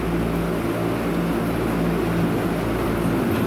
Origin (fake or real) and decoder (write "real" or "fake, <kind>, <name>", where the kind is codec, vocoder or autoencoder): real